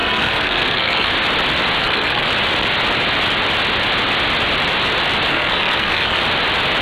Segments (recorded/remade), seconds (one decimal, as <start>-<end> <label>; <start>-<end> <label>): 0.0-1.1 remade; 1.1-1.8 recorded; 1.8-2.3 remade; 2.3-5.3 recorded; 5.3-6.2 remade; 6.2-6.8 recorded